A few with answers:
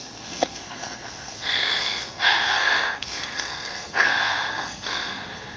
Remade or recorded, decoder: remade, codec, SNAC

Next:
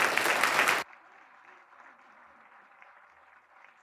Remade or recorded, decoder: recorded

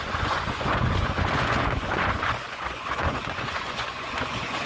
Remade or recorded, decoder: remade, vocoder, Vocos